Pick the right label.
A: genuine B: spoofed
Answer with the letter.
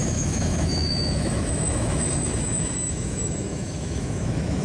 B